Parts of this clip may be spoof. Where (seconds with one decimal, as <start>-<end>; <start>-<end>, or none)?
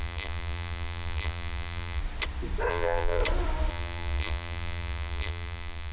0.0-2.0; 2.7-3.2; 3.7-5.9